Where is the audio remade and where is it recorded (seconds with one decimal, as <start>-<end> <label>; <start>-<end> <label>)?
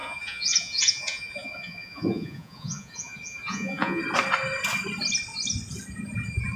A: 0.0-4.0 remade; 4.0-6.6 recorded